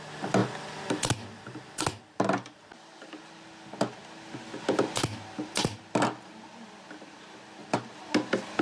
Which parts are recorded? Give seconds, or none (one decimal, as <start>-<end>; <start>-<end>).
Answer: 0.0-8.6